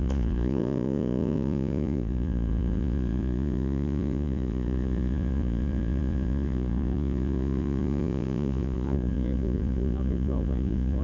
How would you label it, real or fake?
fake